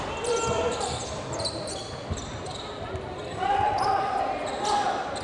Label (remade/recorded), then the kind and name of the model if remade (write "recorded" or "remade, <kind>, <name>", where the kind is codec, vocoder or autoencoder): recorded